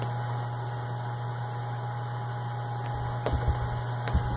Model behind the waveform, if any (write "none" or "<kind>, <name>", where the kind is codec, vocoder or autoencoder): none